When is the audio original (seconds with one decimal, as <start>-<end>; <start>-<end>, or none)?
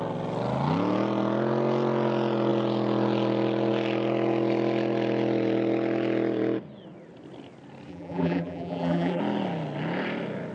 0.0-7.9; 9.2-10.5